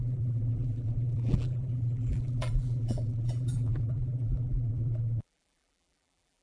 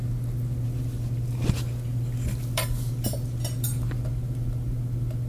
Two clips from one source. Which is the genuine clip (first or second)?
second